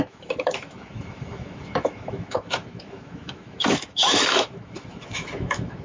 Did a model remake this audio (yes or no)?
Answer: yes